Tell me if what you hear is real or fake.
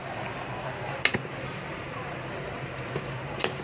real